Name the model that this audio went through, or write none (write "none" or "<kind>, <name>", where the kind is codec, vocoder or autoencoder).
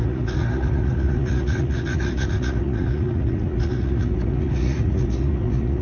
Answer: vocoder, Vocos